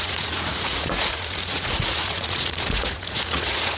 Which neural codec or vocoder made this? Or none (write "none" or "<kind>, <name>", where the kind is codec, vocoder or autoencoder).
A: vocoder, Vocos